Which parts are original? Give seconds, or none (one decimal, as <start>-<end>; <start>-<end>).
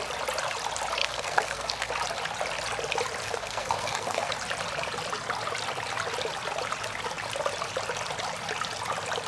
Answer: 0.0-1.0; 1.9-3.2; 4.3-9.3